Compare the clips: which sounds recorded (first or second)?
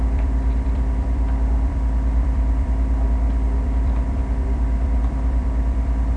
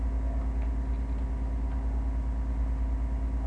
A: second